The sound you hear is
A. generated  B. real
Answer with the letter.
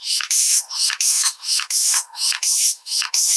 A